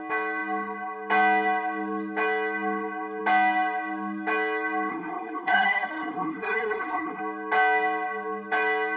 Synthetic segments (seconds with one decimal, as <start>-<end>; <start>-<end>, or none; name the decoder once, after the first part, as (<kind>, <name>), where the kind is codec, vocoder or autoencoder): 4.9-7.2 (codec, SNAC)